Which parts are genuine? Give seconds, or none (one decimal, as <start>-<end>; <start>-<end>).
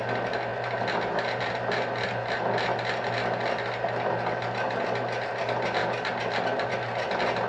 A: 0.0-7.5